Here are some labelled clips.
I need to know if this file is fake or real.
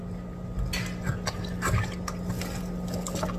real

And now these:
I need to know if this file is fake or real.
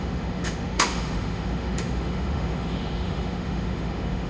fake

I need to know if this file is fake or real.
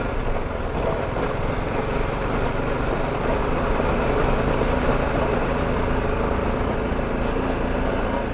real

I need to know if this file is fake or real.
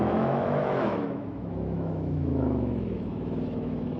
fake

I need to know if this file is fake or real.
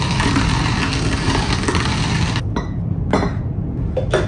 real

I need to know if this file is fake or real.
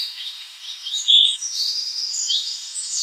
fake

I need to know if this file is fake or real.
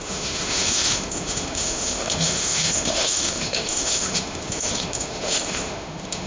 fake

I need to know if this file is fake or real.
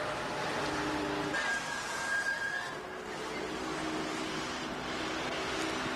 real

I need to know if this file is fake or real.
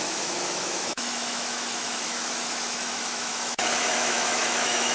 fake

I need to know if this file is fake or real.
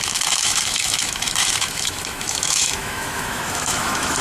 fake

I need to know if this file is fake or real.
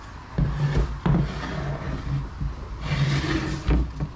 real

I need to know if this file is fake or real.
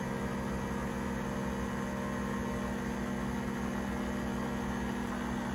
real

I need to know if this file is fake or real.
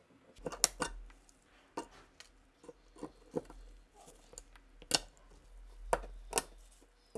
real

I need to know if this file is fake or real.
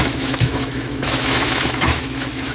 fake